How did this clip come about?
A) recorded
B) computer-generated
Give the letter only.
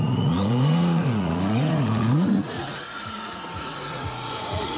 B